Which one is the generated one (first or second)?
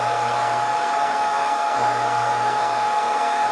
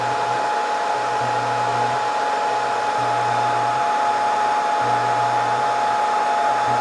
first